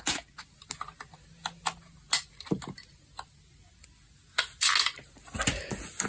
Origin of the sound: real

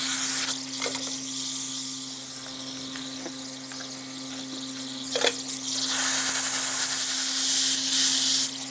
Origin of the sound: real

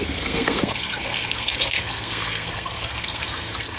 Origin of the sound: fake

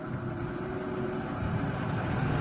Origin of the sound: real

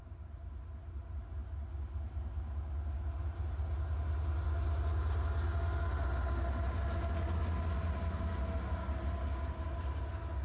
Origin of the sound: real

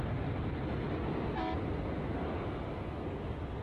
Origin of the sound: real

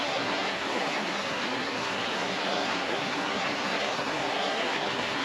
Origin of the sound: fake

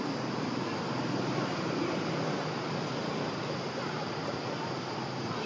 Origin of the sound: real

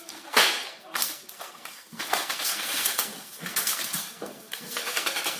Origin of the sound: fake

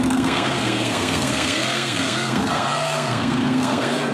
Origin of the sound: fake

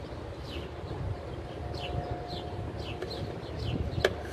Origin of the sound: real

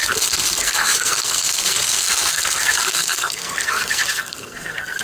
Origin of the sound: fake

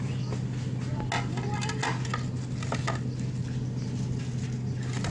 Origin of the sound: real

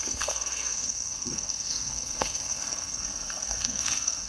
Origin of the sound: fake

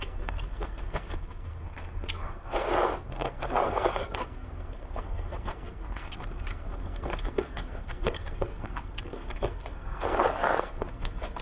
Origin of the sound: fake